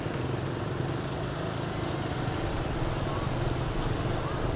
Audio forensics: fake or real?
real